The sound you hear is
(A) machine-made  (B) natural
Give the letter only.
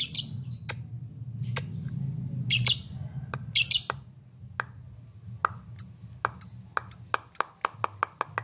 B